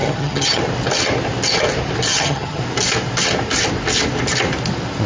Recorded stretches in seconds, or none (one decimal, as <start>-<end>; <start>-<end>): 0.6-2.1; 2.6-5.1